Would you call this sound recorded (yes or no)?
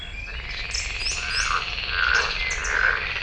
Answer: yes